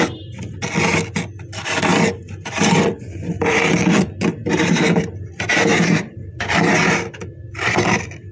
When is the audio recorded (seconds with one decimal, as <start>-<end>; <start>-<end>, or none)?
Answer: 0.0-1.9; 2.8-4.4; 6.6-8.3